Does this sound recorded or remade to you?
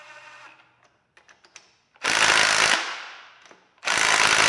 recorded